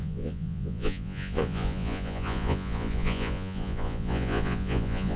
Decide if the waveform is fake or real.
fake